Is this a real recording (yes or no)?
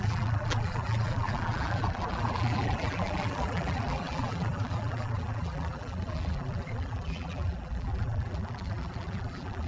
no